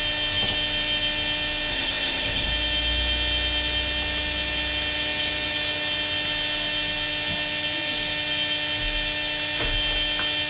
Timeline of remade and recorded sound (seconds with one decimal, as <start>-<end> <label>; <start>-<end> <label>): 0.0-1.7 recorded; 1.7-2.5 remade; 2.5-10.5 recorded